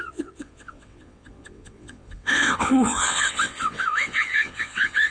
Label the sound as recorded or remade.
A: remade